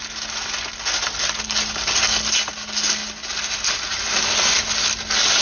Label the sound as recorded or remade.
recorded